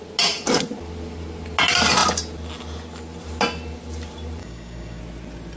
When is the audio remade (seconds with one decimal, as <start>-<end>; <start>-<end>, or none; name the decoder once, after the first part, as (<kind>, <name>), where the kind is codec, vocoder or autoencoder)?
4.4-5.0 (codec, DAC)